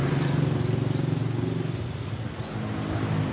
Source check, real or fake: real